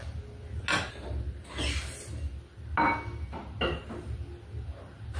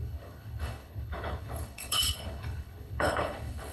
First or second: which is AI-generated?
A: second